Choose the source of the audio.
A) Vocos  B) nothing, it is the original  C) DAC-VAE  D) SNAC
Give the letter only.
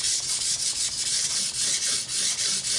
B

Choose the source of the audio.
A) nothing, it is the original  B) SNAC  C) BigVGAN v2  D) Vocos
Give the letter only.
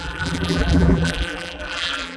C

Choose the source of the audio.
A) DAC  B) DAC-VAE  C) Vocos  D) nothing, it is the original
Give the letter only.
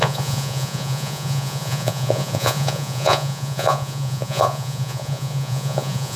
C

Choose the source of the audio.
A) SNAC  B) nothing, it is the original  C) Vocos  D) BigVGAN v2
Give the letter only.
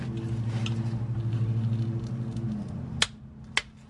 B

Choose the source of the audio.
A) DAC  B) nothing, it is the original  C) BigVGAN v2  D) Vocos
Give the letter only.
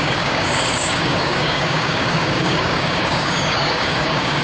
A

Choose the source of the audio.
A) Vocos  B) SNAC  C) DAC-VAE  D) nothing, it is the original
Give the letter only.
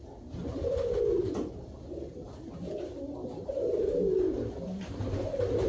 D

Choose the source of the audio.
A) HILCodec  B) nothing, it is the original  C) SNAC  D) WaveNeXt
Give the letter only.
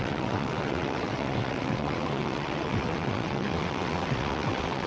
D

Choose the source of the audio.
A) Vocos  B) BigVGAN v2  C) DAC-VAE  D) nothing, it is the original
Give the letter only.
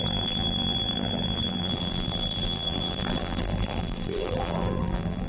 B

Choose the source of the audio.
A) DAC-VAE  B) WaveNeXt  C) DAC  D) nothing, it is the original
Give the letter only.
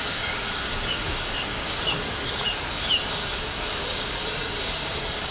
C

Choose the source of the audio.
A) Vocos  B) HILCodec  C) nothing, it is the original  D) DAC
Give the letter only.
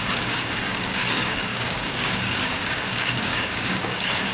D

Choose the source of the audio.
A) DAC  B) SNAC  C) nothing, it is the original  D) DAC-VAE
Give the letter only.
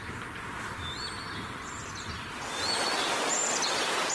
C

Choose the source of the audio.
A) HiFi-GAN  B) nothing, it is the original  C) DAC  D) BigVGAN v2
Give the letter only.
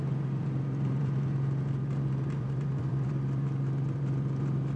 D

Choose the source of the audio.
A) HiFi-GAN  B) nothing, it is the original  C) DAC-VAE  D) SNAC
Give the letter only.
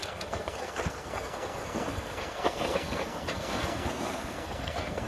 D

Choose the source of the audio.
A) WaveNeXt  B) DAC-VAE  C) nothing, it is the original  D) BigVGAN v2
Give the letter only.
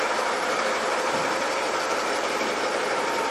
D